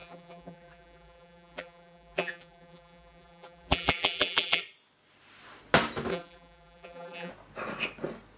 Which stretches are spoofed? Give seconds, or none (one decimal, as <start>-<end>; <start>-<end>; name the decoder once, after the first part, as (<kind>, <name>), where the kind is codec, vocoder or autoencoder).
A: 0.0-4.6 (vocoder, BigVGAN v2); 6.1-7.3